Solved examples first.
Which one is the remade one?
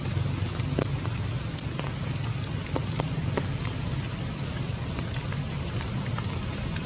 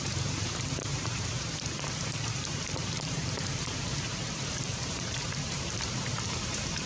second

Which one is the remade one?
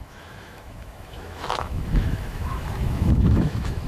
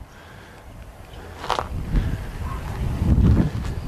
first